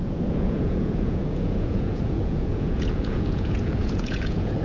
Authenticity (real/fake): fake